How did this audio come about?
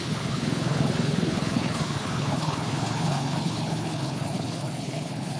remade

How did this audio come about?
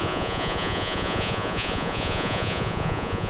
remade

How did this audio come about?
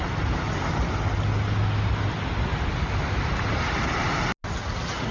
recorded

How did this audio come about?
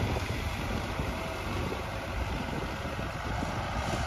remade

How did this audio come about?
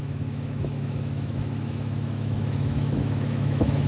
remade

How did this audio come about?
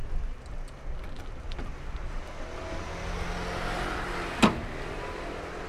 recorded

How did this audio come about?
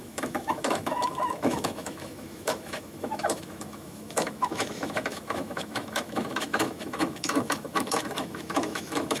remade